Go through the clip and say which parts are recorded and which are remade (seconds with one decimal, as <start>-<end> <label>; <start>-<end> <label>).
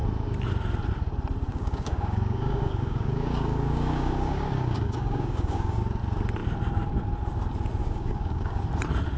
0.0-1.5 recorded; 1.5-5.8 remade; 5.8-7.8 recorded; 7.8-8.6 remade; 8.6-9.2 recorded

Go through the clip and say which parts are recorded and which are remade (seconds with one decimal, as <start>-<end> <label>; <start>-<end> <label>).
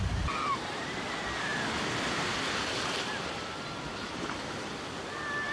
0.0-1.5 recorded; 1.5-4.3 remade; 4.3-5.5 recorded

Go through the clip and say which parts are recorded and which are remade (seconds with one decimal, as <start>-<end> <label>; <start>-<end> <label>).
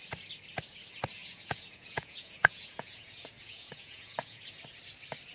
0.0-1.2 recorded; 1.2-4.4 remade; 4.4-5.3 recorded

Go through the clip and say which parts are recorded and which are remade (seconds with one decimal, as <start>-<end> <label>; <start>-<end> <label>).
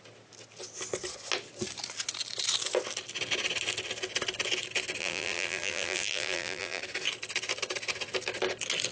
0.0-5.0 recorded; 5.0-6.8 remade; 6.8-8.9 recorded